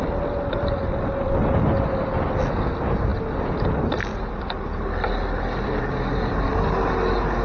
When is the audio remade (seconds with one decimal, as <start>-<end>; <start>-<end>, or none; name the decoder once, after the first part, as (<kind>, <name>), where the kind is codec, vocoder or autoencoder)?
none